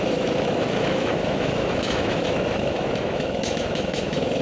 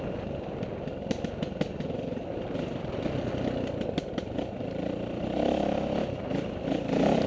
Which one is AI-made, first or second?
first